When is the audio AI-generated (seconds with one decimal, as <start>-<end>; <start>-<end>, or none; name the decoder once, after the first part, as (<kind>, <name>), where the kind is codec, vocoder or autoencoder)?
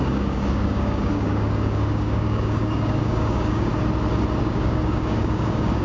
0.0-3.7 (codec, DAC); 4.4-5.8